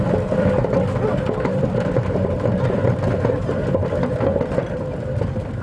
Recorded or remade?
recorded